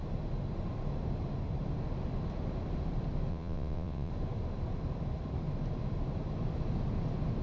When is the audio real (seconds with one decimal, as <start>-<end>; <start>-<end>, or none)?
0.0-3.3; 4.1-7.4